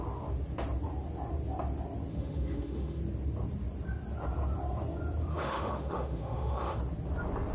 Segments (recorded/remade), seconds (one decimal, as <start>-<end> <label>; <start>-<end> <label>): 0.0-2.1 recorded; 2.1-3.0 remade; 3.0-5.3 recorded; 5.3-6.8 remade; 6.8-7.5 recorded